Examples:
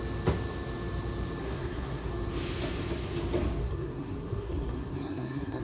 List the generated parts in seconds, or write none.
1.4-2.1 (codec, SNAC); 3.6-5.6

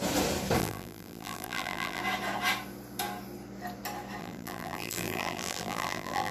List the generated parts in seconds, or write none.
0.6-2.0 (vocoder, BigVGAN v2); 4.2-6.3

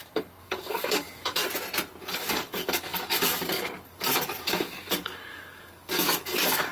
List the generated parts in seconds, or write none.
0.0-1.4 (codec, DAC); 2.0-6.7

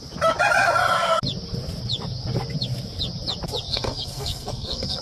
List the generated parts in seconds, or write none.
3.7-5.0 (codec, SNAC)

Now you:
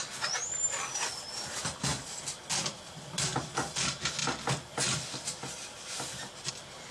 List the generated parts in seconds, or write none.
none